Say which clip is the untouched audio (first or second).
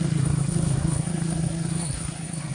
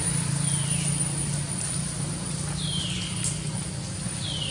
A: second